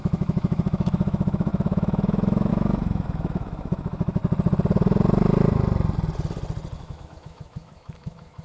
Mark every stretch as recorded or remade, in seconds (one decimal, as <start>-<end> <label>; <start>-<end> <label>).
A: 0.0-4.2 remade; 4.2-6.8 recorded; 6.8-8.4 remade